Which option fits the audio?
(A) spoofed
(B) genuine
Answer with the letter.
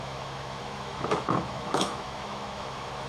A